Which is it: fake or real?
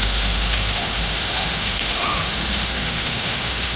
fake